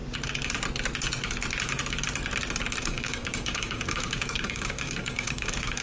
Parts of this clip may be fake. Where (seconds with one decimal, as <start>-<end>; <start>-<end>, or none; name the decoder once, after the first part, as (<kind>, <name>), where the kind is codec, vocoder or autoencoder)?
2.8-5.8 (codec, DAC)